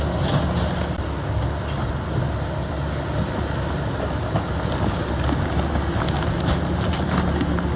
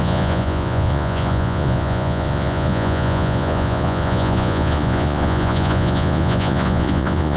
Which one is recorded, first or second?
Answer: first